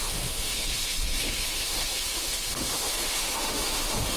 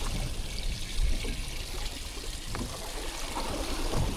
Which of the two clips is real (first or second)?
second